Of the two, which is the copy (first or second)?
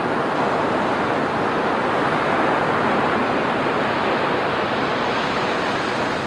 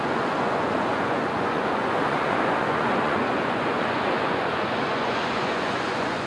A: second